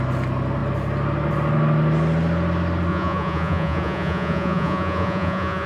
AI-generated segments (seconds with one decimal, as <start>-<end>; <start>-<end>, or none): 2.9-5.7